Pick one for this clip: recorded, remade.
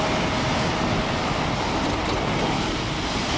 recorded